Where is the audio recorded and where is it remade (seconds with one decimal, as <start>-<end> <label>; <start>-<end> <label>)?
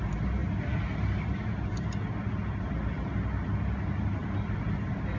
0.0-5.2 recorded